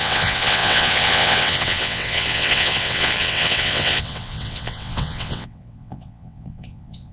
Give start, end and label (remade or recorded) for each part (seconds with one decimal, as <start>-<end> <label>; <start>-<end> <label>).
0.0-7.1 remade